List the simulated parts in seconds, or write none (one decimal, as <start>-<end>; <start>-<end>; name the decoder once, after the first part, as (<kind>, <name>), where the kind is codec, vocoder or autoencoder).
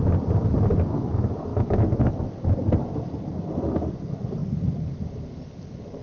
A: 1.5-2.1 (autoencoder, DAC-VAE)